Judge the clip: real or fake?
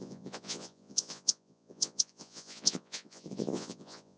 fake